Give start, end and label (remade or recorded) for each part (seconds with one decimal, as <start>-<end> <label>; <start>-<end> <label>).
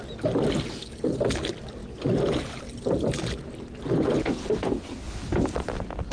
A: 0.0-6.1 recorded